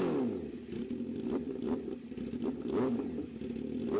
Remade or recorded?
recorded